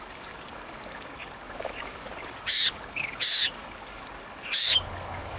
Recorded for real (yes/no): no